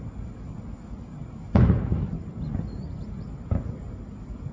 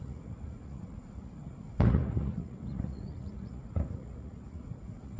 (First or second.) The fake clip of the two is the second